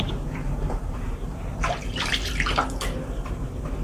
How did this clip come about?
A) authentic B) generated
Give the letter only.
B